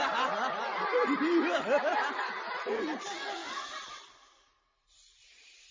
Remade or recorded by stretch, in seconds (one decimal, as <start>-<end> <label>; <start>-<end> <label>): 0.0-5.7 recorded